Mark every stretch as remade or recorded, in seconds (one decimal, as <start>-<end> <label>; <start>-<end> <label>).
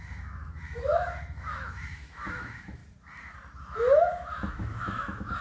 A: 0.0-2.8 remade; 2.8-3.6 recorded; 3.6-5.4 remade